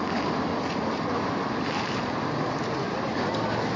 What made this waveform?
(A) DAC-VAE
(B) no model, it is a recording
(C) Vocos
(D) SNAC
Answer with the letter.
B